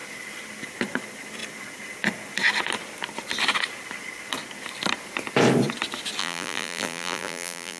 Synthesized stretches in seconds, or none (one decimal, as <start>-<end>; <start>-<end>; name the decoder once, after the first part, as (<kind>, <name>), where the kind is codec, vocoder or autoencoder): 6.2-7.8 (vocoder, BigVGAN v2)